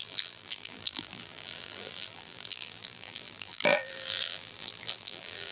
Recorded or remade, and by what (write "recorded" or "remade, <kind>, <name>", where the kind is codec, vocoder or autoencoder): remade, vocoder, BigVGAN v2